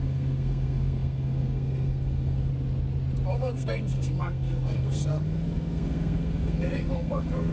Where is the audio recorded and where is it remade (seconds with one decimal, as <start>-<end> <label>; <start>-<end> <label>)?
0.0-2.5 remade; 2.5-3.3 recorded; 3.3-7.5 remade